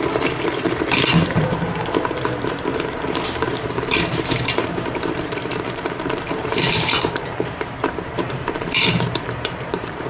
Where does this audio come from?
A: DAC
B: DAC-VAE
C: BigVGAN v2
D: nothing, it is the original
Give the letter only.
C